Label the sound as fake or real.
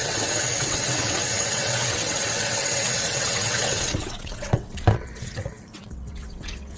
fake